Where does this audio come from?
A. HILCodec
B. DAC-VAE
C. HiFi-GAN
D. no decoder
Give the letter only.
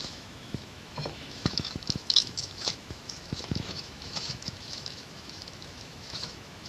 B